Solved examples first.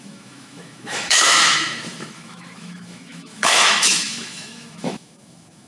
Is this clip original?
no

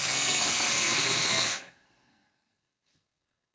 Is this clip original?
no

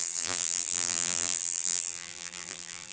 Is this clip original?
no